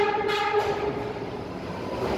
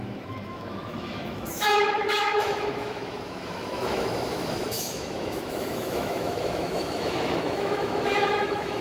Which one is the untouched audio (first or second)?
first